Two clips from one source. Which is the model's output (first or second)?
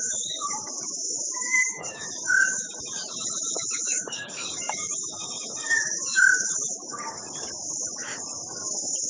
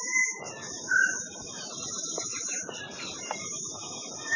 first